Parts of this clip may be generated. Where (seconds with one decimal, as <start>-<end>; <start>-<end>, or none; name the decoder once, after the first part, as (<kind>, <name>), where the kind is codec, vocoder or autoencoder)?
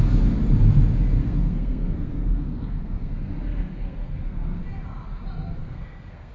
1.2-4.6 (codec, SNAC); 5.6-6.3